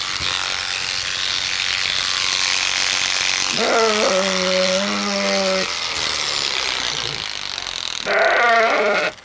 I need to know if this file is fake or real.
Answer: real